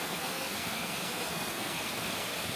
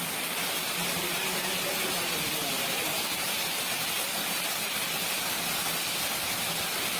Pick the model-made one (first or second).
first